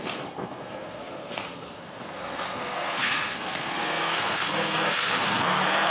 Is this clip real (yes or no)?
no